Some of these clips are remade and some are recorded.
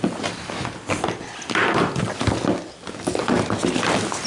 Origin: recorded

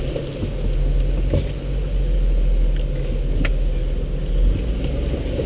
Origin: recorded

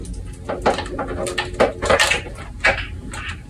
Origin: recorded